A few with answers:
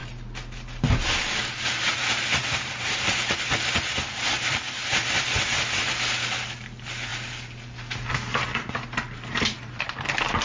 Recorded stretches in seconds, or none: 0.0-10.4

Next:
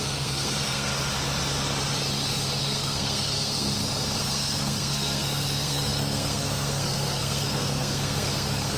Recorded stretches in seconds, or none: 0.9-2.6; 3.7-4.2

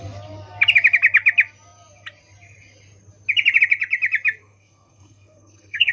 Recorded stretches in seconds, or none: 0.0-4.4

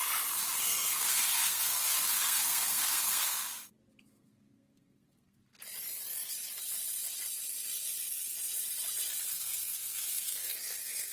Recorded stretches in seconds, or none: 0.0-0.6; 3.5-4.0; 5.4-9.3

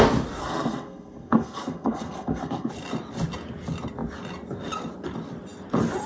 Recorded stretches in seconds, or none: 0.0-0.4; 2.7-6.1

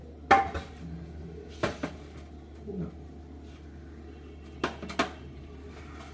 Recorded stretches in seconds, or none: 0.0-6.1

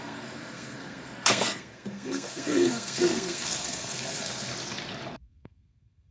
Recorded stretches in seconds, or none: 4.5-5.2